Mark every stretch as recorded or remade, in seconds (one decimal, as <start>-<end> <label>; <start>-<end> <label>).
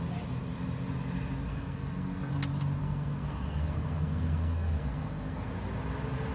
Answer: 0.0-1.5 recorded; 1.5-2.3 remade; 2.3-2.8 recorded; 2.8-5.5 remade; 5.5-6.3 recorded